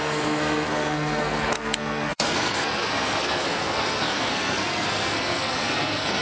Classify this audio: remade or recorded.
remade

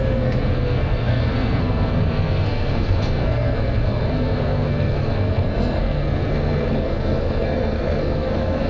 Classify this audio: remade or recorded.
remade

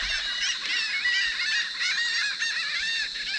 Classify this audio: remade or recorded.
recorded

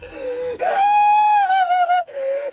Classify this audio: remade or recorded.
remade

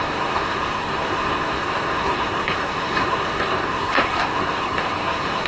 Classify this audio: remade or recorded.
remade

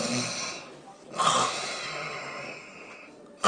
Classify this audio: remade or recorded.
recorded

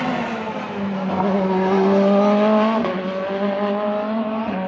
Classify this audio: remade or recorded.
recorded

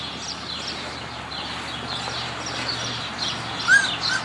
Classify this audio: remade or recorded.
recorded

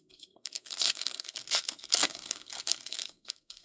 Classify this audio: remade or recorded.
remade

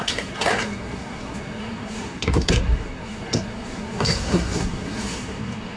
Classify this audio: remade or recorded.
remade